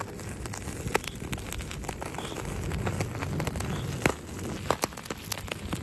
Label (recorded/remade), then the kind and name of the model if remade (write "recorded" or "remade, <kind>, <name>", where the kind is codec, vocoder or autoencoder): recorded